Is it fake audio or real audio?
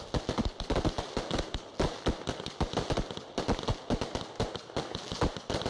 real